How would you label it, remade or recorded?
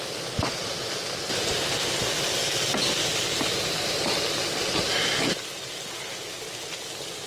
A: recorded